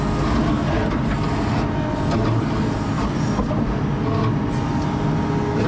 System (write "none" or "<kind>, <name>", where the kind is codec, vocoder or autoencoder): none